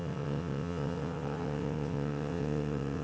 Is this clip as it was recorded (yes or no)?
no